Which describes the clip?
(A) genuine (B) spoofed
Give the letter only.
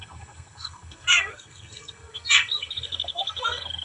B